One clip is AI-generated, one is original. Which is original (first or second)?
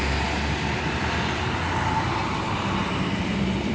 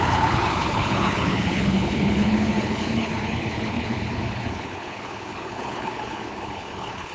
first